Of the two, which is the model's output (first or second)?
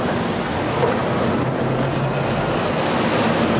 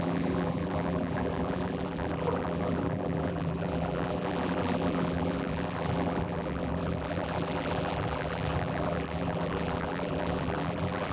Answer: second